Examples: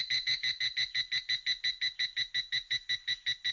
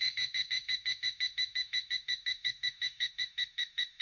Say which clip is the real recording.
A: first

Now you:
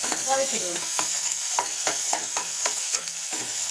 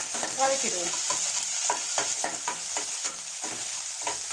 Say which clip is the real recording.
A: second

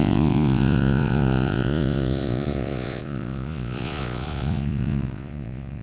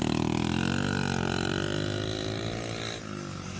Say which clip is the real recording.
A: second